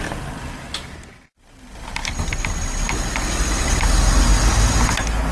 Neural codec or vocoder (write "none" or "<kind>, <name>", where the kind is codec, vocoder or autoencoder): none